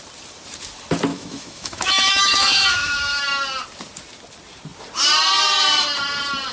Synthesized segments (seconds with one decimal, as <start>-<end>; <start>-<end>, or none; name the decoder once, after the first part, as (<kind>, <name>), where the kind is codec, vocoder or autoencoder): 1.1-3.2 (autoencoder, DAC-VAE)